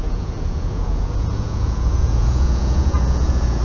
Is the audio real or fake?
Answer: fake